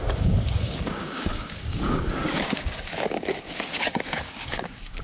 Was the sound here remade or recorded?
remade